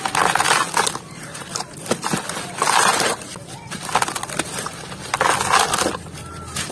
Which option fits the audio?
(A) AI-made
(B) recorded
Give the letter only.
B